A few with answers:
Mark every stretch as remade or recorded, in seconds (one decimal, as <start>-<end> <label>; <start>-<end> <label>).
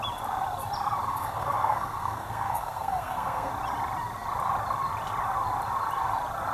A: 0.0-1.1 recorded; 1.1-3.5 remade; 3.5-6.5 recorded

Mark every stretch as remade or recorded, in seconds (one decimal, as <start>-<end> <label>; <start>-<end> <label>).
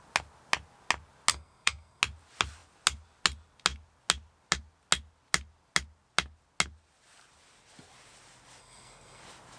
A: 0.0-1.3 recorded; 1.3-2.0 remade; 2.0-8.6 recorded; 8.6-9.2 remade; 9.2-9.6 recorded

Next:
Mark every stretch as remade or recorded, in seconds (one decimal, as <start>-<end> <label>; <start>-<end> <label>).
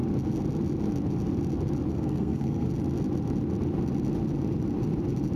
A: 0.0-1.9 recorded; 1.9-2.7 remade; 2.7-5.4 recorded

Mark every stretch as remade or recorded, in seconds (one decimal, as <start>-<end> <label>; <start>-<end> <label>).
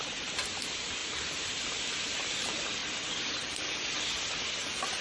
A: 0.0-5.0 recorded